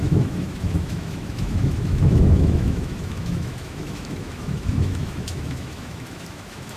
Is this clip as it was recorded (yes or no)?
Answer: no